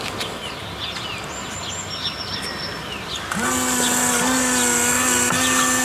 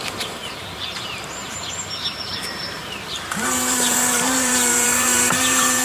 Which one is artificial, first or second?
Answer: second